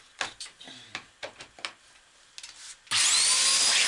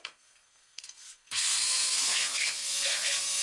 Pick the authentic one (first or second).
first